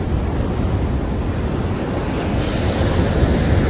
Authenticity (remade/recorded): recorded